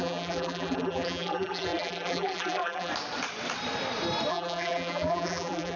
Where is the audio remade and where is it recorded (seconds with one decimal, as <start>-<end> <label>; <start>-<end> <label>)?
0.0-2.9 remade; 2.9-4.3 recorded; 4.3-5.8 remade